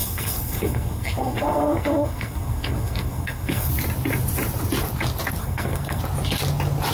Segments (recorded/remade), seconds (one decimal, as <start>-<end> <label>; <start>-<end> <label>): 0.0-3.7 remade; 3.7-5.4 recorded; 5.4-6.0 remade; 6.0-6.9 recorded